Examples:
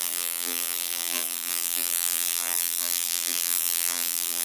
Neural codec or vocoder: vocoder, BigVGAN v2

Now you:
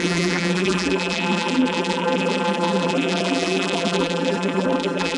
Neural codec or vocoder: vocoder, BigVGAN v2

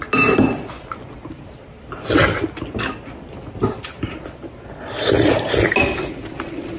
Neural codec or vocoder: none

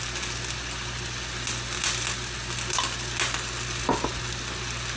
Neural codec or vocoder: none